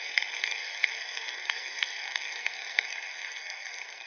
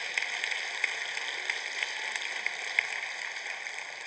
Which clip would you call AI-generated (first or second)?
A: first